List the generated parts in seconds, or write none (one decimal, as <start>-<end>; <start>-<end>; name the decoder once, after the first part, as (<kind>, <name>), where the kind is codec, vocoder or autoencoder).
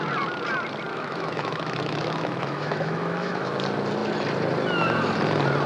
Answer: 0.9-3.6 (autoencoder, DAC-VAE)